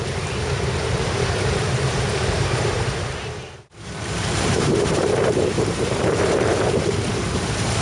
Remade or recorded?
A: remade